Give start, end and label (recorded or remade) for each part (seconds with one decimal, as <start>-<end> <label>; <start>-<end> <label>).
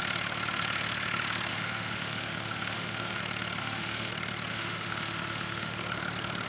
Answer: 0.0-1.5 recorded; 1.5-3.2 remade; 3.2-3.6 recorded; 3.6-4.1 remade; 4.1-4.5 recorded; 4.5-5.8 remade; 5.8-6.5 recorded